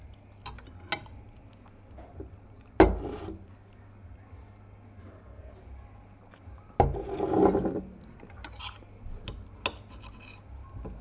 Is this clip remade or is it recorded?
recorded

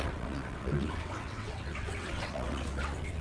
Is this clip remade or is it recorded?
remade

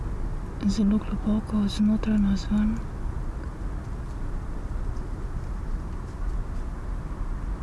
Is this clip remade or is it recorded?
recorded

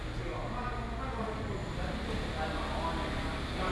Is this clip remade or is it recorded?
recorded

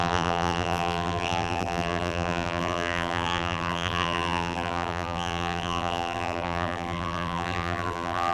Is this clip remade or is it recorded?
remade